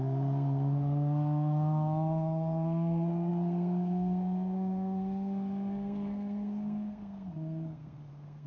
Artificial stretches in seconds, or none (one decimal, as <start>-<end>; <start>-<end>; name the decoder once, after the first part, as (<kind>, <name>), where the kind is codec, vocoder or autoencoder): 0.0-8.5 (codec, SNAC)